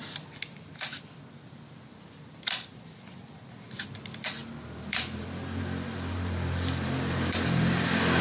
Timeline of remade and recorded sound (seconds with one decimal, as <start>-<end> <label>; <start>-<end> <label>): 0.0-4.4 recorded; 4.4-8.2 remade